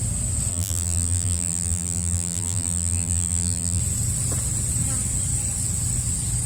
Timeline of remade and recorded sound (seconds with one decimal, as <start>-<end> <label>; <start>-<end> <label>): 0.0-0.5 recorded; 0.5-3.8 remade; 3.8-6.5 recorded